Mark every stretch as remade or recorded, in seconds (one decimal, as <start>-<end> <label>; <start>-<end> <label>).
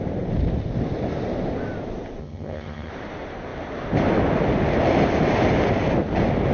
0.0-2.2 recorded; 2.2-2.9 remade; 2.9-6.5 recorded